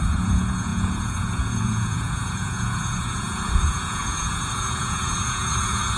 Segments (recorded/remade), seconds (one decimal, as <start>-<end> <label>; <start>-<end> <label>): 0.0-6.0 remade